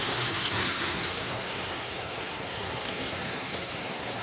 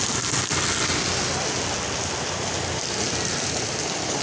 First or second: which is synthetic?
first